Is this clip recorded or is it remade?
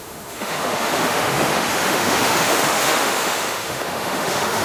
remade